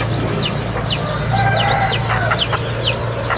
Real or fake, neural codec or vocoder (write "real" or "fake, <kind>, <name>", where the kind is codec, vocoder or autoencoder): real